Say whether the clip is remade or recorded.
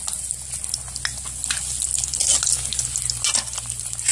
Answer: recorded